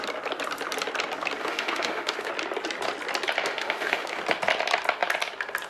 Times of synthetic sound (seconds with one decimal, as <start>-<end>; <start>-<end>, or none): 1.4-2.3; 3.4-4.2